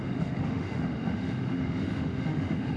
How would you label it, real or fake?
fake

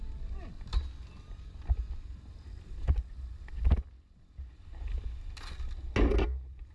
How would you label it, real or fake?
real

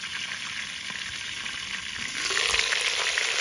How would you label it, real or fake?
real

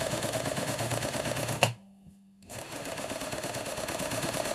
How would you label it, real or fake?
fake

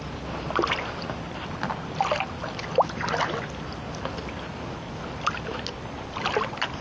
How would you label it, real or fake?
real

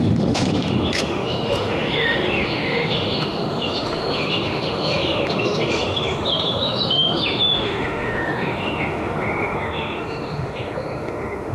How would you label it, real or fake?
fake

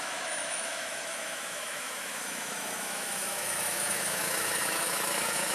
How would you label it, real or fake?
fake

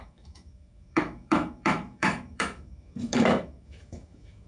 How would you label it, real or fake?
fake